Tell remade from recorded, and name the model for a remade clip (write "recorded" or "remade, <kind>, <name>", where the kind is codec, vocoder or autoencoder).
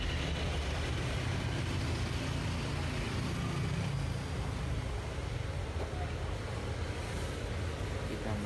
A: recorded